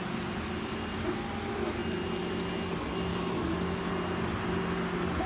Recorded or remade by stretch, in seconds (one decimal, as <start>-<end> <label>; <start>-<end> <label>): 0.0-3.1 recorded; 3.1-3.9 remade; 3.9-5.3 recorded